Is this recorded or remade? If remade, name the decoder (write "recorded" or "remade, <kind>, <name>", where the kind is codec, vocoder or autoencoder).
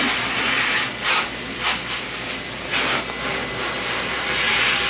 recorded